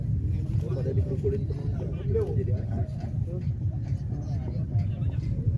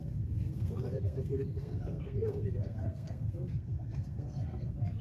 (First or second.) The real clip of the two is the first